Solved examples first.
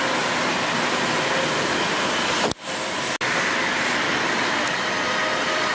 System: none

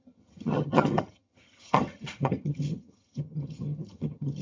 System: vocoder, HiFi-GAN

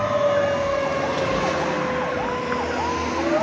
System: none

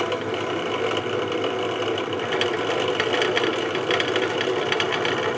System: none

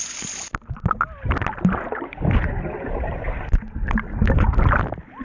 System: none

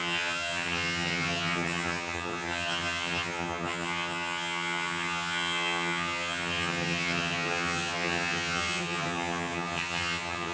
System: vocoder, HiFi-GAN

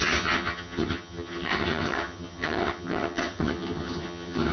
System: vocoder, HiFi-GAN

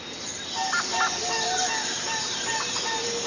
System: none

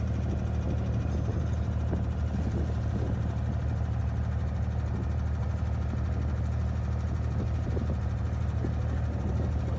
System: none